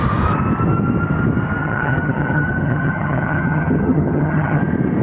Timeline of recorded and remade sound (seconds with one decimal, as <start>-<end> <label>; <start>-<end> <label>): 0.0-1.6 recorded; 1.6-4.6 remade; 4.6-5.0 recorded